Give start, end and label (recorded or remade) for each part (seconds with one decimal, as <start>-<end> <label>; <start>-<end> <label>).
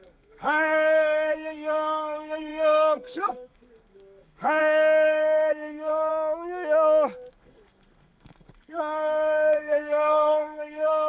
0.0-6.1 remade; 6.1-7.3 recorded; 7.3-11.1 remade